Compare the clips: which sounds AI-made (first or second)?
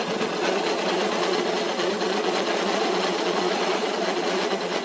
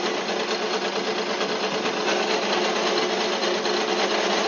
first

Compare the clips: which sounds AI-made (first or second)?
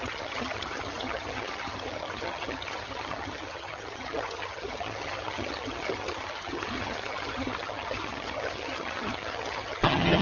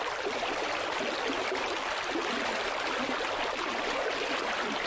first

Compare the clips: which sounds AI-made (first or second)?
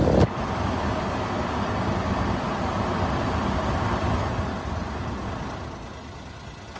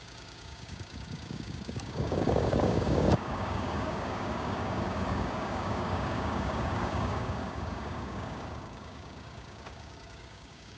second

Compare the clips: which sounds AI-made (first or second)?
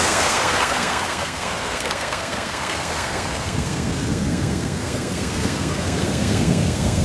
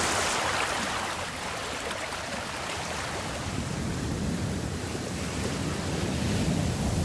first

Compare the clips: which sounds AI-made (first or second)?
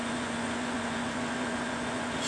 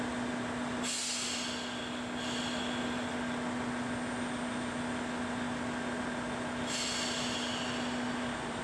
first